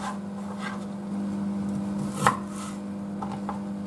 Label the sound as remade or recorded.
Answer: recorded